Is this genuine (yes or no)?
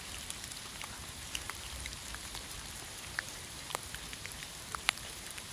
no